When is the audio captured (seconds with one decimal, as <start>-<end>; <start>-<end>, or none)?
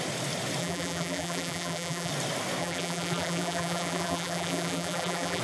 0.0-0.6; 2.1-2.6